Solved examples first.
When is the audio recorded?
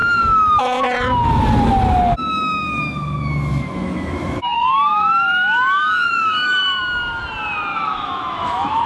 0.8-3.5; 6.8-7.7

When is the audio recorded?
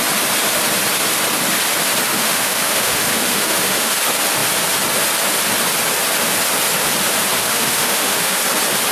0.0-2.1; 3.9-7.4; 8.4-8.9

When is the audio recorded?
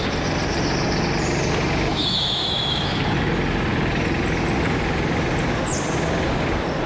0.0-1.9; 3.0-6.9